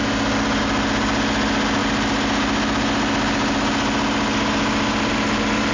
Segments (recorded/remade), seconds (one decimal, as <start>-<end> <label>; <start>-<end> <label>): 0.0-5.7 recorded